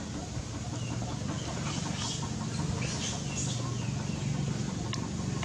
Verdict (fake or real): real